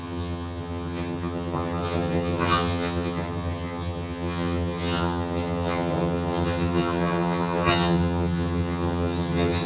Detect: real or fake fake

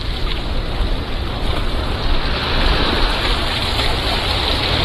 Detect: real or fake fake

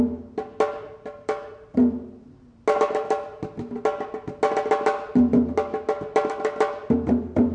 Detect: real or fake real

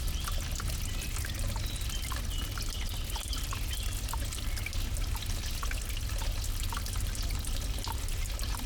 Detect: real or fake real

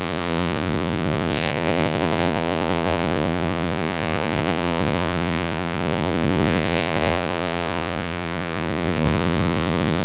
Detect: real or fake fake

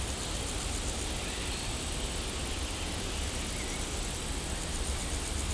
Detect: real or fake real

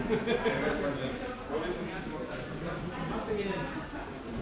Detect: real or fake real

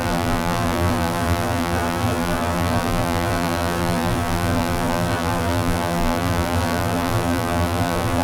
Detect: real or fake fake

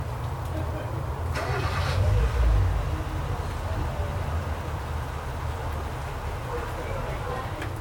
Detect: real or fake real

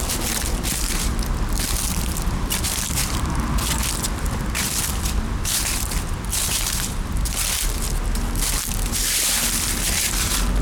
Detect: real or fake real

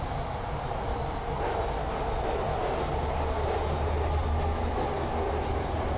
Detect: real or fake real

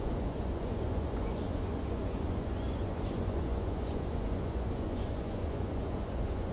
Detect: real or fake fake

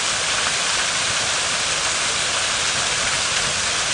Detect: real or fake real